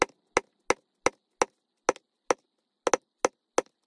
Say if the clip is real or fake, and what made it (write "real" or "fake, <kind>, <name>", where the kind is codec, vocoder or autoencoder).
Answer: real